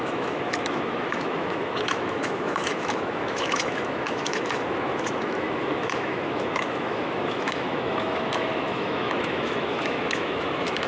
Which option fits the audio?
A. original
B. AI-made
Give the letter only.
B